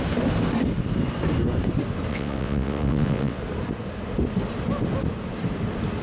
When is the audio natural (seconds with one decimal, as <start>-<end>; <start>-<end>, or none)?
0.0-2.1; 3.4-6.0